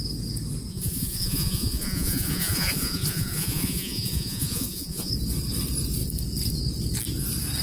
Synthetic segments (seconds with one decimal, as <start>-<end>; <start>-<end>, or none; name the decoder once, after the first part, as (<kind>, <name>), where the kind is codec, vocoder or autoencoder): 0.7-5.1 (vocoder, Vocos)